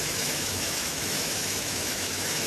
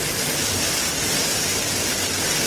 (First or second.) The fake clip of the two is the first